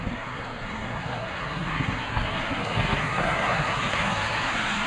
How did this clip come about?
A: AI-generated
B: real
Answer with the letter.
A